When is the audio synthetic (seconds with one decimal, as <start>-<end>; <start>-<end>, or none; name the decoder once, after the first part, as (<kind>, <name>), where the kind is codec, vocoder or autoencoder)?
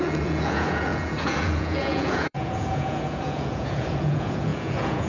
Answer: 0.0-5.1 (vocoder, Vocos)